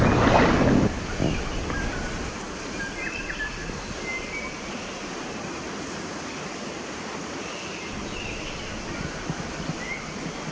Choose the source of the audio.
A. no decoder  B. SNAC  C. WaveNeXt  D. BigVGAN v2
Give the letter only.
A